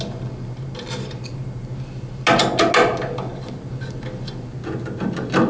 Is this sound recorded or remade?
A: recorded